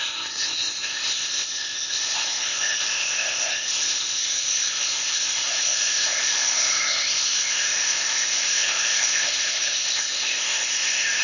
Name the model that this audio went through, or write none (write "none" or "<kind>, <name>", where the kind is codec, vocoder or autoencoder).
codec, ZipCodec